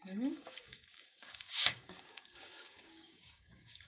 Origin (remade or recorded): remade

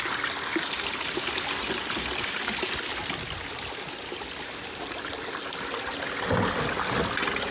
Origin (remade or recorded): recorded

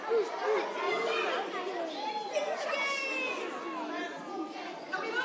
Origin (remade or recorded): recorded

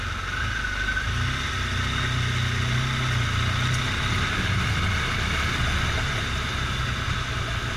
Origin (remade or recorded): recorded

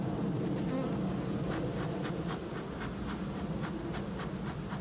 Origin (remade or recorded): recorded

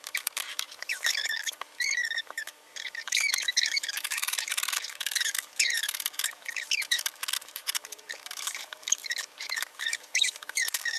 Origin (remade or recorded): remade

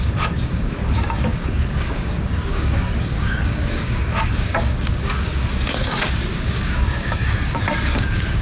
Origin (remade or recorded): remade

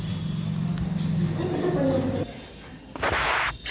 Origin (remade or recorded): recorded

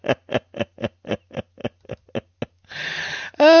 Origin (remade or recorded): recorded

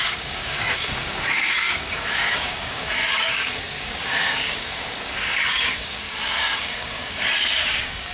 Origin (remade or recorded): remade